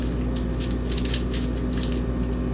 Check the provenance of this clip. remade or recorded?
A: recorded